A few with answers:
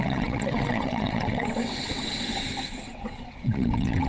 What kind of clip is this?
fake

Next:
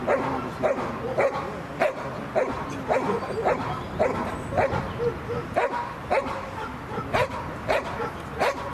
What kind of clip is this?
real